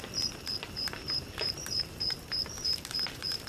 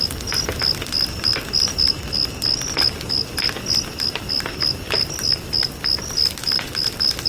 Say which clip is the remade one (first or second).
first